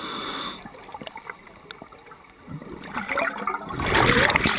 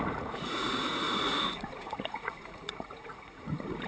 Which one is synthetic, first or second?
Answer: second